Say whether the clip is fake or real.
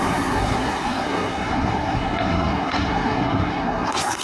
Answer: fake